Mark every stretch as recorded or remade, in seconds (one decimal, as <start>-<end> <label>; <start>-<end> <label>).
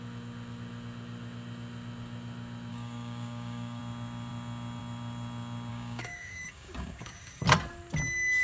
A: 0.0-2.7 recorded; 2.7-3.8 remade; 3.8-5.7 recorded; 5.7-7.4 remade; 7.4-8.4 recorded